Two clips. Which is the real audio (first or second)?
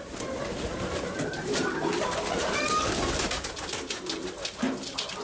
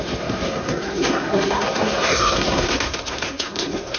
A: first